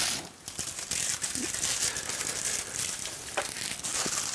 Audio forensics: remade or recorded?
recorded